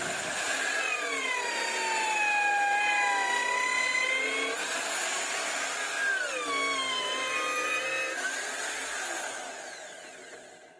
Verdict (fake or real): real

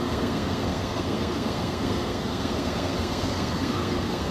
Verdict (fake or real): fake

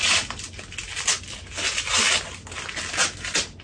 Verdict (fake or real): real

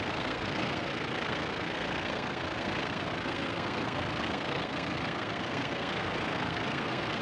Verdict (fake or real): fake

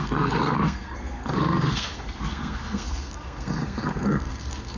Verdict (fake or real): fake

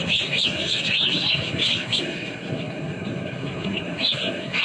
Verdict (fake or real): fake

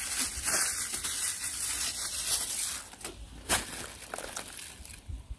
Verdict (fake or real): real